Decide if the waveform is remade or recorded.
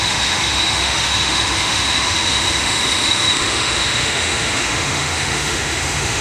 remade